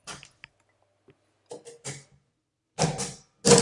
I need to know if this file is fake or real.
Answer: real